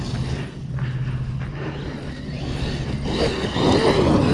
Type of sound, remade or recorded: recorded